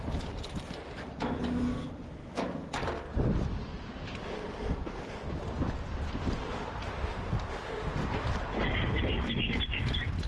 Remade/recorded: recorded